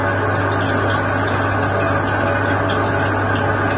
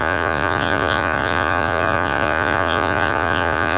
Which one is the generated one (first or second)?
second